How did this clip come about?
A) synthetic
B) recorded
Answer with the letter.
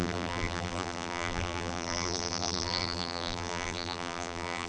A